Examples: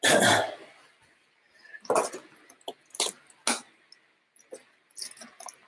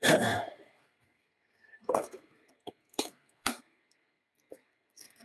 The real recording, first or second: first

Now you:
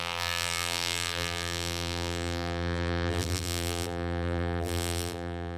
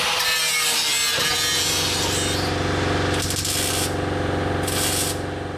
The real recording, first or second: second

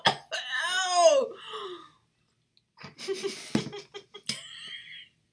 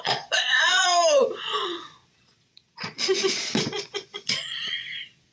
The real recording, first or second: first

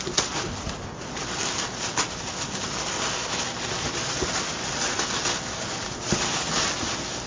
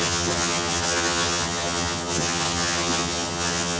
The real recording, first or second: first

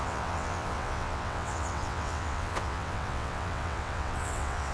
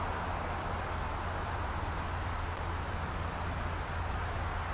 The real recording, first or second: second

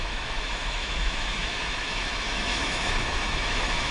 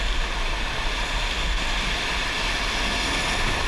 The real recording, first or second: second